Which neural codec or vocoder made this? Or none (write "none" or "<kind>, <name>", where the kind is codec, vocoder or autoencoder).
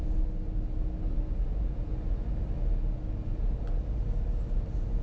none